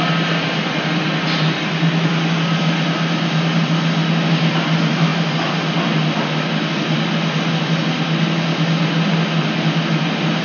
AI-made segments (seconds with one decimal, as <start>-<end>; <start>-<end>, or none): none